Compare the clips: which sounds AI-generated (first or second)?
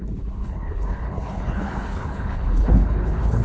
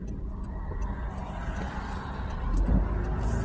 first